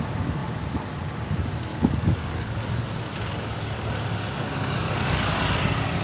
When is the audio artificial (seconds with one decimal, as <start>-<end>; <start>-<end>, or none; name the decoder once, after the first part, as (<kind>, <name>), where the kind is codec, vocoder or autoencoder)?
1.7-2.6 (codec, DAC); 3.1-5.4